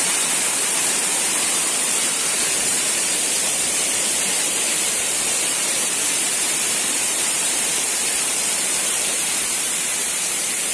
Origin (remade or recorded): remade